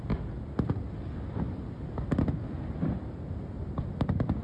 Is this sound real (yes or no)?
yes